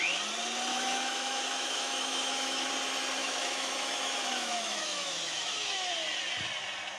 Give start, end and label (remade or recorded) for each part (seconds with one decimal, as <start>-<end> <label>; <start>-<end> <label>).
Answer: 0.0-0.7 recorded; 0.7-2.7 remade; 2.7-3.2 recorded; 3.2-5.9 remade; 5.9-7.0 recorded